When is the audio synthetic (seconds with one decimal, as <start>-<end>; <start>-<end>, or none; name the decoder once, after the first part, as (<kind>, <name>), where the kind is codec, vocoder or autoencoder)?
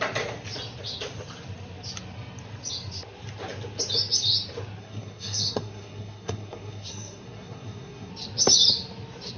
4.8-8.1 (codec, SNAC)